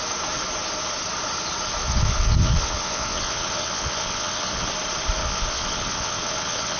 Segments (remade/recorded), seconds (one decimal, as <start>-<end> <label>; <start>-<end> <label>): 0.0-1.8 recorded; 1.8-4.7 remade; 4.7-5.2 recorded; 5.2-6.8 remade